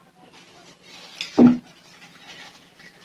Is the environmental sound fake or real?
real